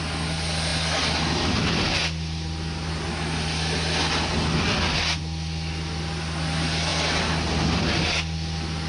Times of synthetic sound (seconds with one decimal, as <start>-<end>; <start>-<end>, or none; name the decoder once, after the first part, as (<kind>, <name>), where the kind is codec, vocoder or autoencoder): none